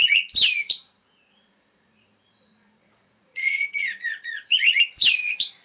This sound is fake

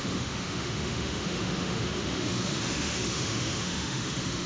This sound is fake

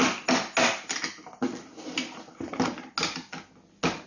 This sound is real